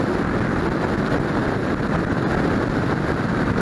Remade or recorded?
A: recorded